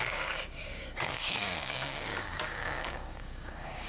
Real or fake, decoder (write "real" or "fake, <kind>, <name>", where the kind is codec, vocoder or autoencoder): fake, codec, DAC